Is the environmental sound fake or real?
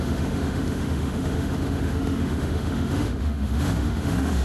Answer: fake